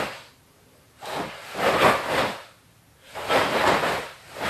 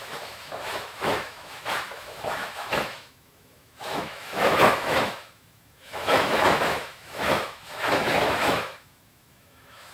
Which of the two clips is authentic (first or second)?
first